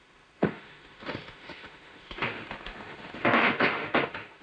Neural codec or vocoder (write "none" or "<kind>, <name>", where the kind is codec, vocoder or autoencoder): autoencoder, DAC-VAE